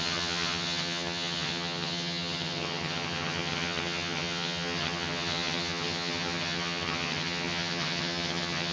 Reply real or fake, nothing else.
fake